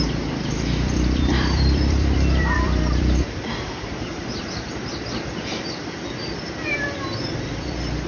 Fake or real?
fake